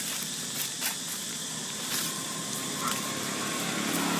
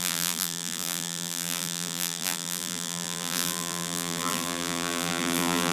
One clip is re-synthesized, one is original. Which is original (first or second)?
first